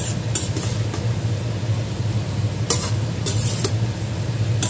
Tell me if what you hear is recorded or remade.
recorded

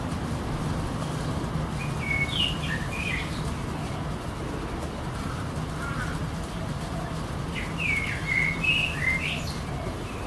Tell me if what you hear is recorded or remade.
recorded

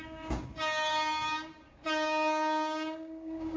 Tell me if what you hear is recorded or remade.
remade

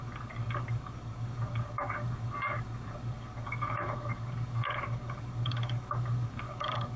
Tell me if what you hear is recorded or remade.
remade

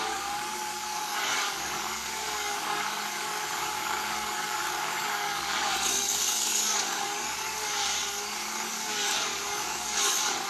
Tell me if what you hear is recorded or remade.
remade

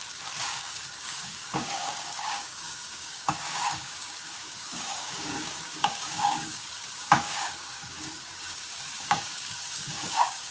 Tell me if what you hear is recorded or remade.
remade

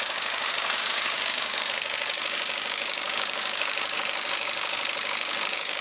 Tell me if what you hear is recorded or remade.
remade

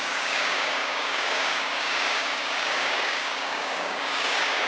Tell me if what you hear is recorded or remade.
remade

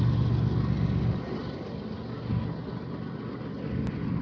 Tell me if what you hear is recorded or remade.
recorded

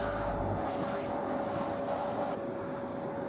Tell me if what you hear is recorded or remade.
recorded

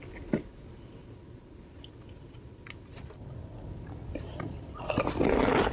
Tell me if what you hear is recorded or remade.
recorded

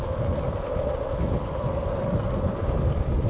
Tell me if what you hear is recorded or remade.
recorded